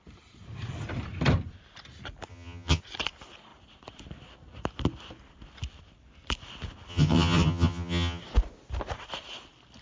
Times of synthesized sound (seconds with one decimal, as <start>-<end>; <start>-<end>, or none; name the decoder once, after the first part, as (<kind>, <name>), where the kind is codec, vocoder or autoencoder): 2.3-2.8 (vocoder, HiFi-GAN); 6.9-8.2